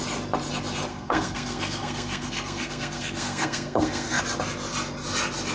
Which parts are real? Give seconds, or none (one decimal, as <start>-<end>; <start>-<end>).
0.0-0.9; 4.2-5.5